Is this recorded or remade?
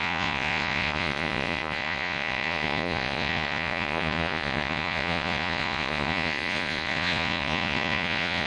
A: remade